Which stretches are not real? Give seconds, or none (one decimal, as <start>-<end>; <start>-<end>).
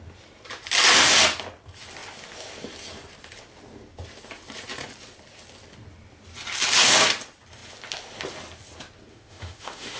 9.1-10.0